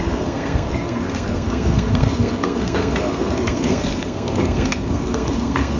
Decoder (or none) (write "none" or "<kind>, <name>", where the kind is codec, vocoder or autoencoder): codec, SNAC